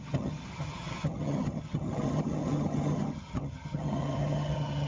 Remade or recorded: remade